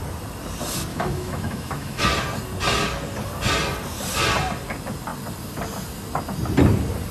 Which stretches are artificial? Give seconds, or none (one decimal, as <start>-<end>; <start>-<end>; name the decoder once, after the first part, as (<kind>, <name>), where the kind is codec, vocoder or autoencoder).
0.9-2.0 (autoencoder, DAC-VAE)